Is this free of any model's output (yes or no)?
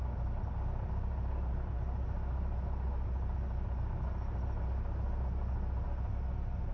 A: yes